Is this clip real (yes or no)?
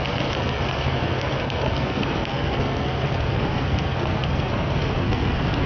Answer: no